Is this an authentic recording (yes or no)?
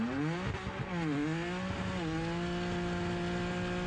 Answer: yes